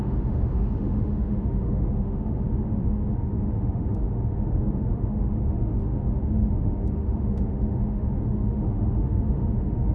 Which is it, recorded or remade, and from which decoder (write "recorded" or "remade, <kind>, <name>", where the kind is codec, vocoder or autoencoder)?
remade, autoencoder, DAC-VAE